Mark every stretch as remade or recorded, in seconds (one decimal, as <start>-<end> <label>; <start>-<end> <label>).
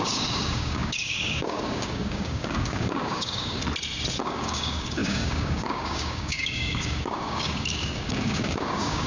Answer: 0.0-3.6 remade; 3.6-4.2 recorded; 4.2-9.1 remade